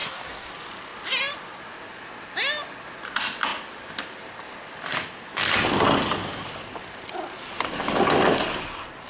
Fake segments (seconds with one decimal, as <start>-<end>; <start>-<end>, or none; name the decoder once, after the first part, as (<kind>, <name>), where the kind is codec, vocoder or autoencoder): 0.0-0.5 (codec, DAC)